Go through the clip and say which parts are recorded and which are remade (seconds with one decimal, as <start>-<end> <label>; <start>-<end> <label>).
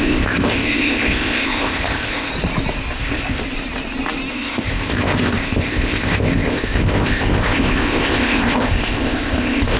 0.0-2.3 remade; 2.3-3.0 recorded; 3.0-3.4 remade; 3.4-4.3 recorded; 4.3-9.8 remade